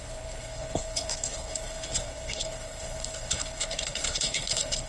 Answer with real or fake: fake